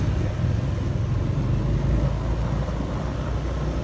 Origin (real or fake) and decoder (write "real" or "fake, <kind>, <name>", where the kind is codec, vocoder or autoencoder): real